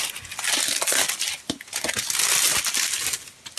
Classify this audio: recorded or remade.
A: recorded